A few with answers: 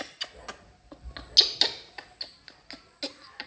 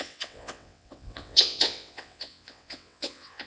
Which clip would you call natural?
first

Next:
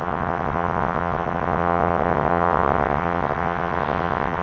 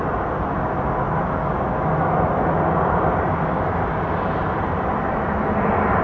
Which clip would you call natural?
second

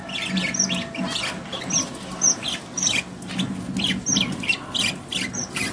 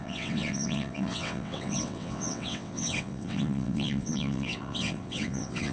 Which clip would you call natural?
first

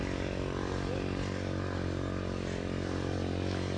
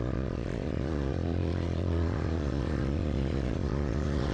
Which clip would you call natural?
first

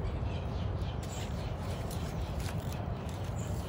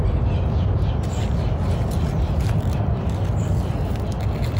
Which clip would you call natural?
second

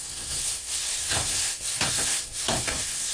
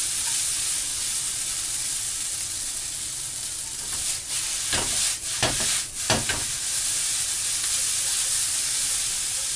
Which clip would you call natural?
second